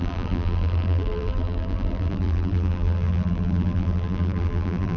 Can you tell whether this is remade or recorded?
remade